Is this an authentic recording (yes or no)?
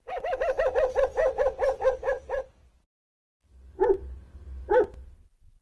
yes